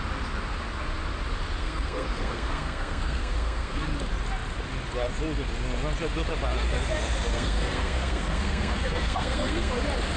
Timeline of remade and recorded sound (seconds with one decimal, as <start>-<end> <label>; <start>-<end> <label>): 0.0-1.6 recorded; 1.6-3.8 remade; 3.8-7.3 recorded; 7.3-9.7 remade; 9.7-10.2 recorded